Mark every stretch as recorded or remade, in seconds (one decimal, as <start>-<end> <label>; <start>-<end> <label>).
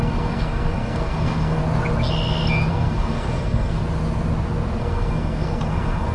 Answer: 0.0-1.6 remade; 1.6-2.7 recorded; 2.7-3.8 remade; 3.8-4.8 recorded; 4.8-6.1 remade